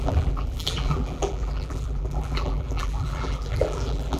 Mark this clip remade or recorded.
remade